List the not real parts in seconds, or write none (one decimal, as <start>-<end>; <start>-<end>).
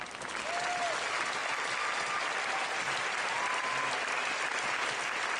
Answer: none